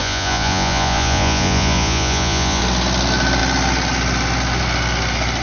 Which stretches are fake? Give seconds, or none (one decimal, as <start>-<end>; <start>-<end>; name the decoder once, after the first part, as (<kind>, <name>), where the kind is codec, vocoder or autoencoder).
0.0-2.6 (vocoder, Vocos)